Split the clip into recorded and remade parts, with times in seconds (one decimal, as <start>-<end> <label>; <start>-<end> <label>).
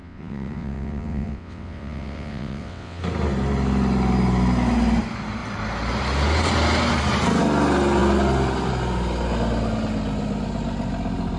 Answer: 0.0-3.0 remade; 3.0-11.4 recorded